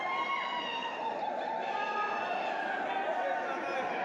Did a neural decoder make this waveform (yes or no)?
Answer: no